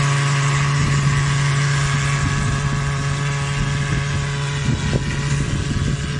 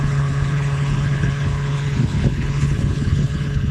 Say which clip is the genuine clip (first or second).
first